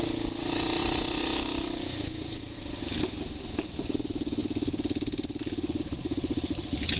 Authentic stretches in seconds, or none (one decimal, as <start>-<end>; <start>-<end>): 0.0-0.8; 2.8-7.0